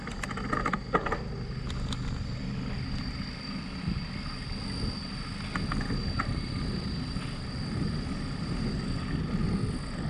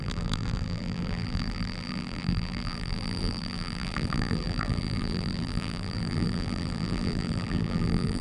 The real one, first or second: first